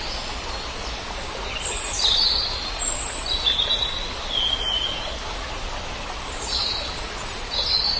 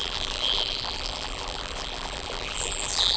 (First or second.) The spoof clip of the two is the second